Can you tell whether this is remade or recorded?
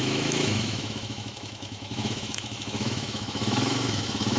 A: remade